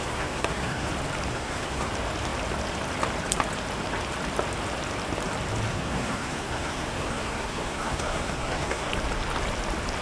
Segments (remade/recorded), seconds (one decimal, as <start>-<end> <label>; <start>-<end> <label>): 0.0-0.9 remade; 0.9-1.3 recorded; 1.3-1.9 remade; 1.9-5.7 recorded; 5.7-8.9 remade; 8.9-10.0 recorded